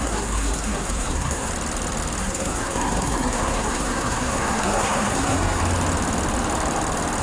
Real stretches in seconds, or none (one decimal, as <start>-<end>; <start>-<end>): 1.5-2.2; 5.6-7.2